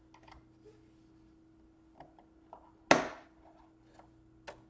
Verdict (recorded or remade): recorded